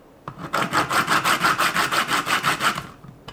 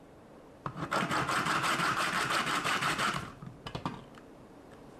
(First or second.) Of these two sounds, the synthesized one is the second